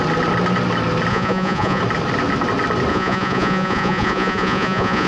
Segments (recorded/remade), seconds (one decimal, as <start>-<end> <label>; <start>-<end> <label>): 0.0-1.1 recorded; 1.1-1.8 remade; 1.8-2.9 recorded; 2.9-5.1 remade

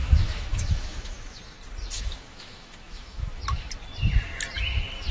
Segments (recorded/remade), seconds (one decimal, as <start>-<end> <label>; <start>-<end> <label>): 0.0-1.4 remade; 1.4-1.8 recorded; 1.8-3.4 remade; 3.4-5.1 recorded

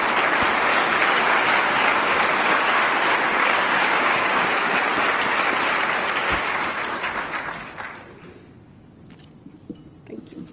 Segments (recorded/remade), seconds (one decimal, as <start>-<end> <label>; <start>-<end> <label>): 0.0-0.7 recorded; 0.7-4.8 remade; 4.8-6.3 recorded; 6.3-6.8 remade; 6.8-10.5 recorded